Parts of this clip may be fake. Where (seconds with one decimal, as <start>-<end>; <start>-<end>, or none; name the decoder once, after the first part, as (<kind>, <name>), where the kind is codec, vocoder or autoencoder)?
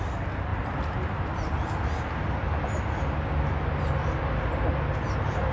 none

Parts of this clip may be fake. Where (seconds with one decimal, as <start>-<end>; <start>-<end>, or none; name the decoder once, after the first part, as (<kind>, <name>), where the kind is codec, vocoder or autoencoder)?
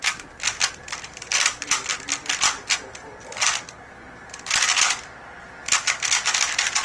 0.0-1.9 (vocoder, BigVGAN v2); 5.8-6.8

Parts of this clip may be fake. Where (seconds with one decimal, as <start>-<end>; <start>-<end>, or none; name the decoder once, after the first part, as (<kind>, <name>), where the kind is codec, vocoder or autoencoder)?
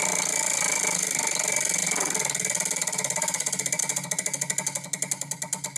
none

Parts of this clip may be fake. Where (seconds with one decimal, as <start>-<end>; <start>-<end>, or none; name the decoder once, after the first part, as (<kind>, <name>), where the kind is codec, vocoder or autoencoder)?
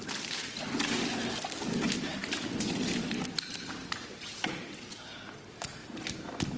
3.8-4.4 (vocoder, BigVGAN v2)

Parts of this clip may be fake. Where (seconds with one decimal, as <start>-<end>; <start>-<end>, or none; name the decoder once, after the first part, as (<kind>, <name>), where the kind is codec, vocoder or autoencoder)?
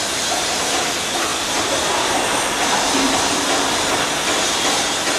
1.3-4.4 (vocoder, BigVGAN v2)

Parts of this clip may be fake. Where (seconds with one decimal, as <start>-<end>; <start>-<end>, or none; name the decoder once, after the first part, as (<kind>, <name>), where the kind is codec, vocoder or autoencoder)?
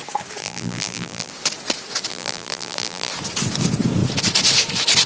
0.4-1.3 (vocoder, BigVGAN v2); 2.1-3.1